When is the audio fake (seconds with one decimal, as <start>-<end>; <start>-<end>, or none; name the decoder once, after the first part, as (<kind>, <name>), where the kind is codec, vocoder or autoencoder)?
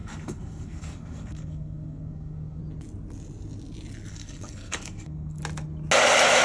0.0-2.6 (codec, SNAC); 4.1-5.4